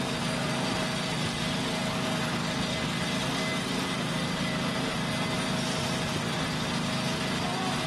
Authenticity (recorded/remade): recorded